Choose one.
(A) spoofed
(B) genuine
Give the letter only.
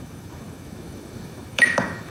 A